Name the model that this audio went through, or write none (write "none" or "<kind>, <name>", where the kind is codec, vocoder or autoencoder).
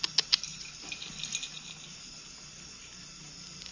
none